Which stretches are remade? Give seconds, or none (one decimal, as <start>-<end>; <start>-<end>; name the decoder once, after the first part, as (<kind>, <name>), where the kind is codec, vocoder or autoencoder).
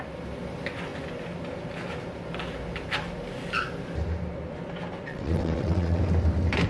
5.1-6.0 (vocoder, WaveNeXt)